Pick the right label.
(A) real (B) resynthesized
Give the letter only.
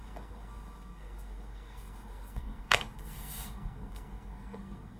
B